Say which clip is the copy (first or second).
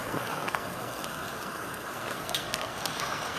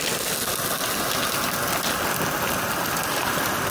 first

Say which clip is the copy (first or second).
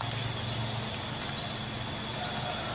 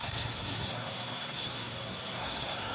second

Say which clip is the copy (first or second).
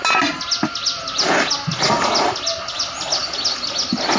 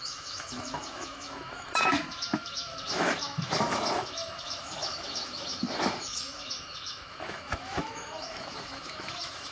second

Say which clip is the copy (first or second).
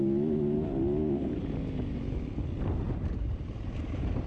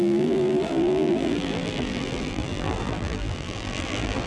second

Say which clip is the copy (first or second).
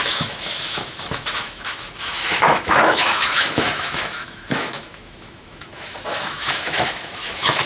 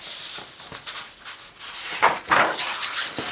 first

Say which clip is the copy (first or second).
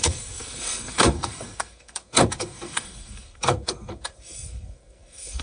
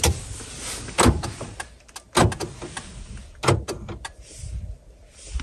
first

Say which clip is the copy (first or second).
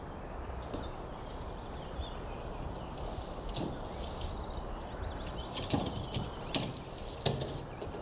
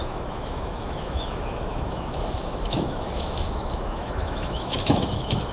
second